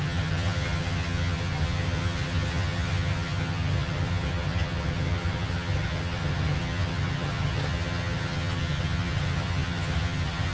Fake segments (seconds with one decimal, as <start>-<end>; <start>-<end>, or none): 0.0-10.5